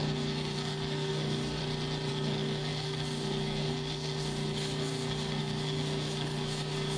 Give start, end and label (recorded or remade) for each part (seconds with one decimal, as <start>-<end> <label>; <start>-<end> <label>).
0.0-1.6 remade; 1.6-2.1 recorded; 2.1-7.0 remade